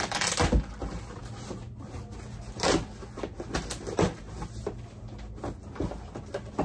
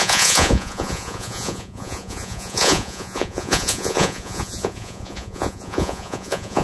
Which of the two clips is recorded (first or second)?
first